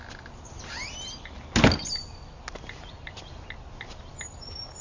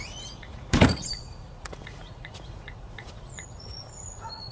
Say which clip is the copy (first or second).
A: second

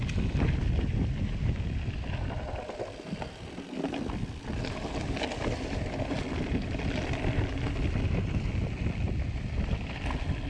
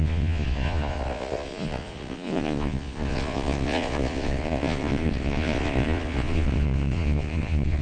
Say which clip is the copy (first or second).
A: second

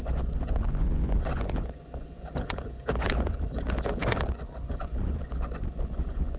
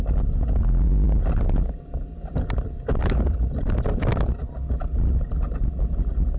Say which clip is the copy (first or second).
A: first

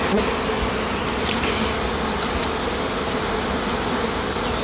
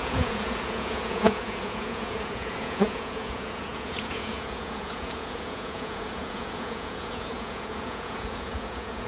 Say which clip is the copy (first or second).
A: second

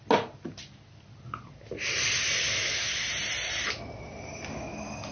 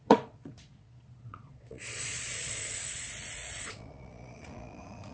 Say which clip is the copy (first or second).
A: second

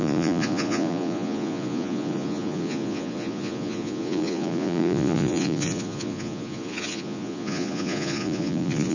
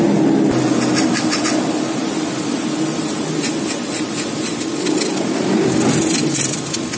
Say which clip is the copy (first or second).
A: first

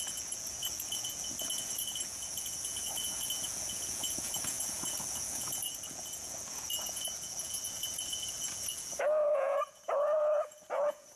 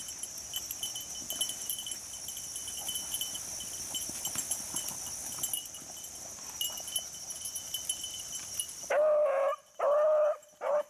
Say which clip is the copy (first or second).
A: first